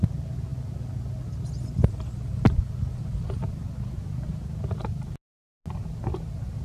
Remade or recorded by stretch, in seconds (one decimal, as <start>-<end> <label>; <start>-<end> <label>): 0.0-6.6 recorded